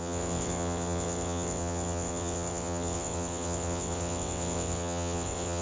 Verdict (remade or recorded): remade